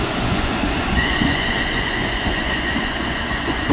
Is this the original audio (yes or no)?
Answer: no